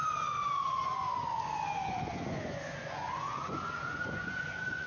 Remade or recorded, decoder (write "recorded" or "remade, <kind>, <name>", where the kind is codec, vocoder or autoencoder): remade, vocoder, Vocos